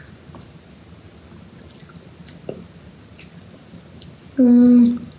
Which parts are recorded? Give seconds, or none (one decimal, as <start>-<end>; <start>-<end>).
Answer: 0.0-5.2